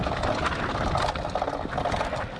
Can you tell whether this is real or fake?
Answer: real